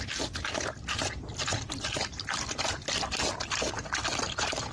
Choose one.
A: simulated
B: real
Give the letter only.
B